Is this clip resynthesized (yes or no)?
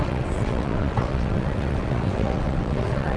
yes